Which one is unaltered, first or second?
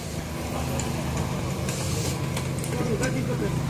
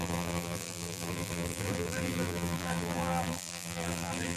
first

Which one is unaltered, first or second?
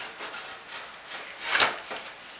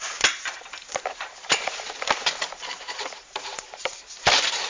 first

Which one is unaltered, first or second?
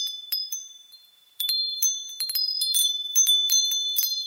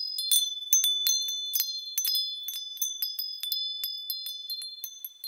second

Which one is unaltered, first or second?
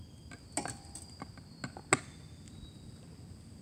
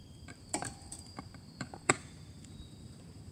first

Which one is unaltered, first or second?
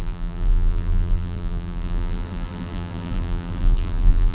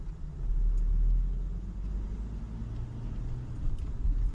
second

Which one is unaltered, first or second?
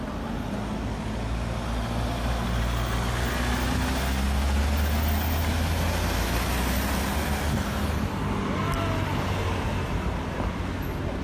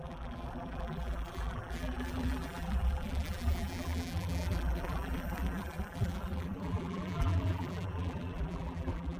first